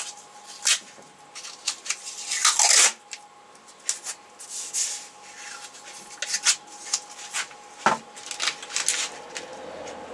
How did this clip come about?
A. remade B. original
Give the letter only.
B